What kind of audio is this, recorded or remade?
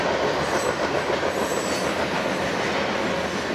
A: recorded